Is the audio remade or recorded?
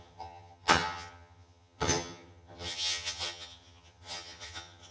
remade